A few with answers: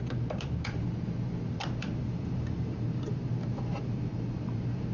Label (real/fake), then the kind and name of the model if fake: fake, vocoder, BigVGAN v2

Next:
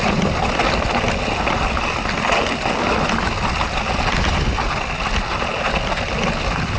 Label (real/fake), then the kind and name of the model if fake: real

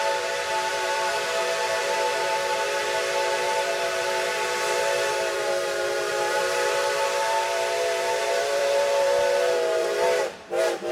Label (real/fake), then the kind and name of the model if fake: fake, vocoder, BigVGAN v2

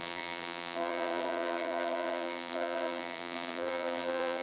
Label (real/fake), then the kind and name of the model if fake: fake, vocoder, BigVGAN v2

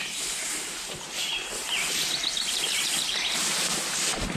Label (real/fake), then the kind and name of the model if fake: fake, vocoder, BigVGAN v2